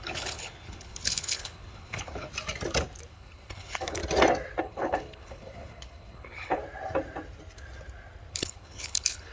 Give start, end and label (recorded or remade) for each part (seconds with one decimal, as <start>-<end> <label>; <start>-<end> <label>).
0.0-2.3 remade; 2.3-3.1 recorded; 3.1-4.0 remade; 4.0-4.6 recorded; 4.6-6.6 remade; 6.6-8.3 recorded; 8.3-9.3 remade